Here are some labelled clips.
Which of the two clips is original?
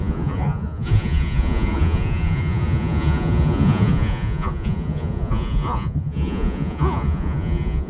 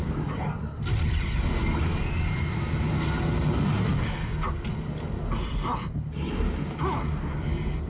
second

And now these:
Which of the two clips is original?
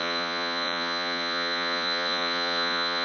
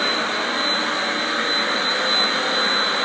second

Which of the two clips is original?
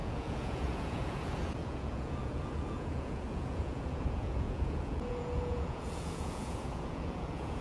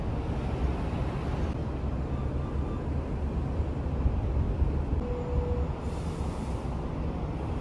second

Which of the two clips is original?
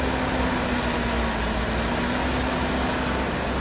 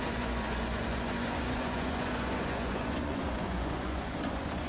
first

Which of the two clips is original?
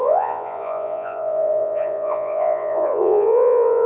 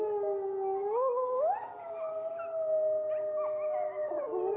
second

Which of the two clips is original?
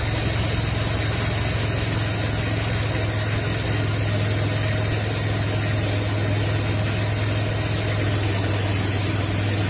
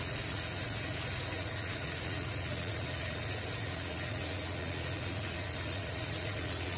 first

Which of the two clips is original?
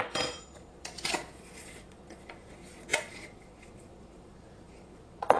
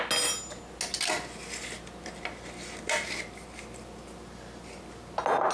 second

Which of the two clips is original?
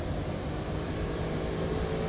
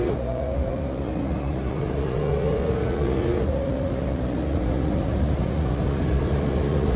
first